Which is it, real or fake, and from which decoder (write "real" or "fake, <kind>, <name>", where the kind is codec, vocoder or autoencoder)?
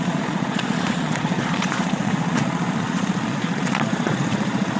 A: fake, vocoder, Vocos